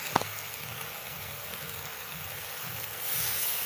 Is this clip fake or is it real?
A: fake